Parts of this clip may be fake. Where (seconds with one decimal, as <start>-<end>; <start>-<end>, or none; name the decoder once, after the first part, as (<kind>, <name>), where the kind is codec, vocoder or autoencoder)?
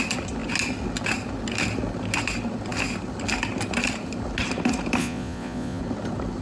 5.0-5.8 (vocoder, Vocos)